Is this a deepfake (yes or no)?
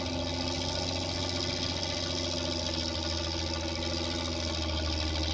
no